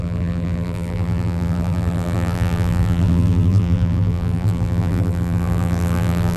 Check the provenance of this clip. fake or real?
fake